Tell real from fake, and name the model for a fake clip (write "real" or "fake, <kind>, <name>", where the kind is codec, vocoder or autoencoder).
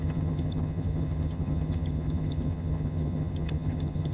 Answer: fake, vocoder, HiFi-GAN